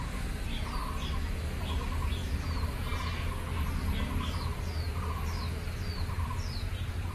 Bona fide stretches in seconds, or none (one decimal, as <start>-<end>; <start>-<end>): 0.0-7.1